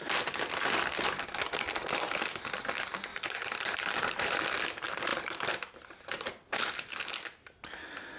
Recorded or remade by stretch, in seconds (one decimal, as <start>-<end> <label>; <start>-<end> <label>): 0.0-3.1 recorded; 3.1-4.4 remade; 4.4-5.1 recorded; 5.1-6.3 remade; 6.3-8.2 recorded